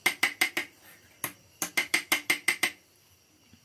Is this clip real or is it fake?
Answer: real